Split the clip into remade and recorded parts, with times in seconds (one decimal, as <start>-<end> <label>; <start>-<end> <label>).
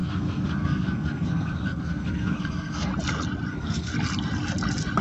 0.0-2.9 remade; 2.9-3.5 recorded; 3.5-3.9 remade; 3.9-5.0 recorded